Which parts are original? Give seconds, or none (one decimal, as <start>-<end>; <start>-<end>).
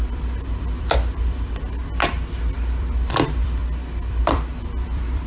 1.8-2.5; 3.6-4.1